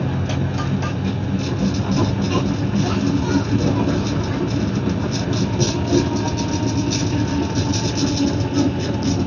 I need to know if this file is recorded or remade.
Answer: recorded